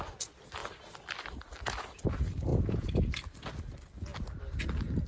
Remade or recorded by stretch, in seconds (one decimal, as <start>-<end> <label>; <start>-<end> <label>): 0.0-2.5 recorded; 2.5-3.1 remade; 3.1-5.1 recorded